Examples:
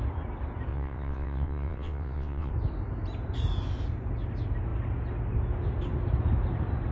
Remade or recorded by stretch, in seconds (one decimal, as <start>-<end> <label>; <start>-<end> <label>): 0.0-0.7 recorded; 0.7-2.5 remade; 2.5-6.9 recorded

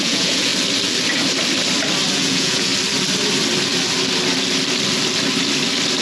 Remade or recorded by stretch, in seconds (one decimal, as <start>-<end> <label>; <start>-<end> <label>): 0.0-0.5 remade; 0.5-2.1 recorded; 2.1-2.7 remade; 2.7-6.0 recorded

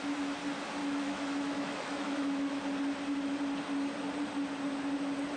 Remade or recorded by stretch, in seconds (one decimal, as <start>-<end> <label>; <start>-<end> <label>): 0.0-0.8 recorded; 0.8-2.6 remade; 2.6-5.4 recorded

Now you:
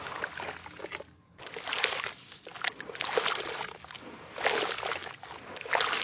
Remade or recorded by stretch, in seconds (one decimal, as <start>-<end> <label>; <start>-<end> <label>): 0.0-6.0 recorded